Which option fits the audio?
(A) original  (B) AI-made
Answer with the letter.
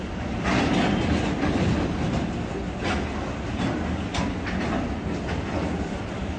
A